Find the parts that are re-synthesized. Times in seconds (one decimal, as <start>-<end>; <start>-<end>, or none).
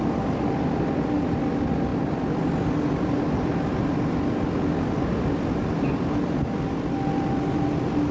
none